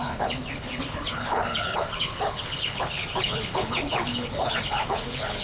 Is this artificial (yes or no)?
yes